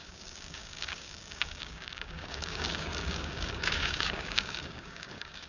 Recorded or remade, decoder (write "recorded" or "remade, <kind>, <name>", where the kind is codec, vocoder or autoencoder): remade, codec, DAC